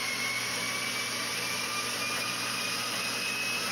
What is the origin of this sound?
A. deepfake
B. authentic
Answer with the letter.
B